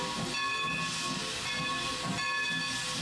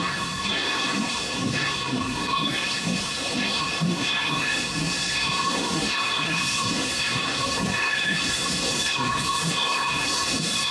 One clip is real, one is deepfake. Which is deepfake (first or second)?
second